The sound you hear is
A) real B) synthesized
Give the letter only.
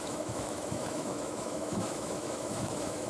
B